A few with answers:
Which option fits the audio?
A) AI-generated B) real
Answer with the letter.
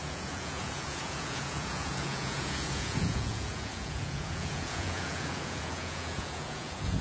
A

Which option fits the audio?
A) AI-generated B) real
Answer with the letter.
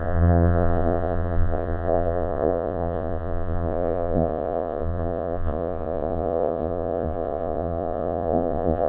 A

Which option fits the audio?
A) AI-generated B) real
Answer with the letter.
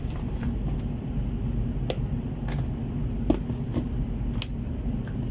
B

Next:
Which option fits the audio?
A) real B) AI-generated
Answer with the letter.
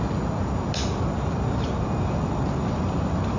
A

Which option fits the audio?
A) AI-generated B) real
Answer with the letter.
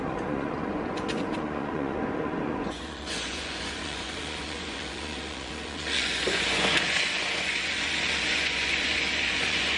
A